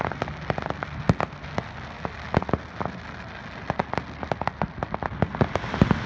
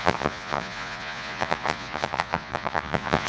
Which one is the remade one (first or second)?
second